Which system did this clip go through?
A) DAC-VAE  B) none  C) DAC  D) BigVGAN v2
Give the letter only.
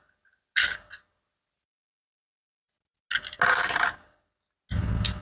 B